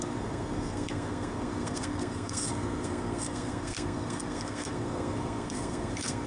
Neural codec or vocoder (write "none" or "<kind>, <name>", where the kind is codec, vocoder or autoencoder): codec, SNAC